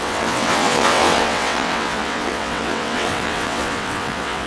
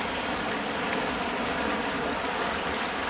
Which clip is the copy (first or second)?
first